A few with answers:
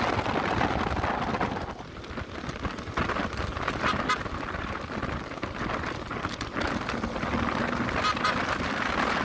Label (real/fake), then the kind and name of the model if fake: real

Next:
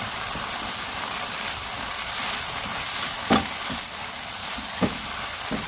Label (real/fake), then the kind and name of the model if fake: fake, vocoder, BigVGAN v2